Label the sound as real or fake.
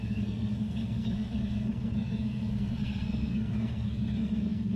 fake